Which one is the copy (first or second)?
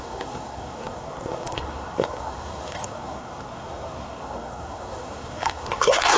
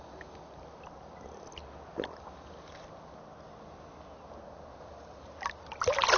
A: first